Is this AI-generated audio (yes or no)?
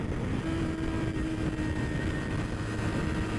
no